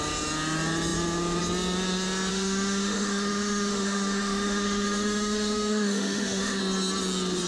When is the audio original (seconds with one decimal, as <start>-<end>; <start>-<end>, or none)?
0.0-2.3; 6.6-7.5